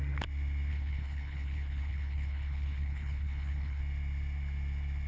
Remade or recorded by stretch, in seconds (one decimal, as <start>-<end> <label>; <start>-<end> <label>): 0.0-0.7 recorded; 0.7-3.8 remade; 3.8-5.1 recorded